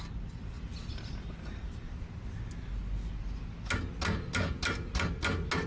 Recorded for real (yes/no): yes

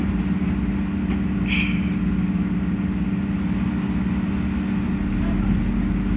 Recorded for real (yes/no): yes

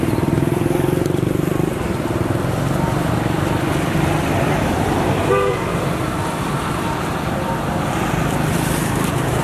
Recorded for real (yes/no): no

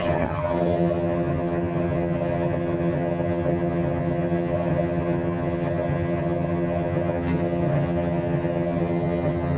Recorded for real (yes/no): no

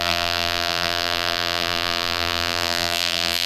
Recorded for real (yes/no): no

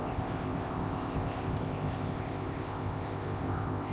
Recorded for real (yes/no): no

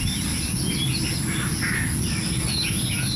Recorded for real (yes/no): yes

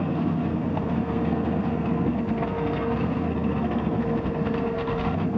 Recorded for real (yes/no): no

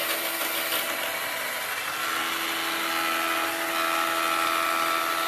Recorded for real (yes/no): yes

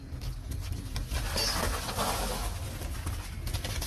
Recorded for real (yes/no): yes